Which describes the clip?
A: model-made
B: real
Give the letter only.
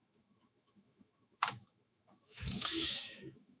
A